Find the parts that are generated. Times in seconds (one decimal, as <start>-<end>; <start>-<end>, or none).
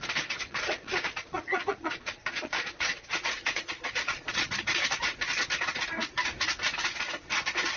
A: 0.5-4.5